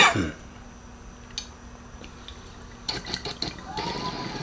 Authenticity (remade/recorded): recorded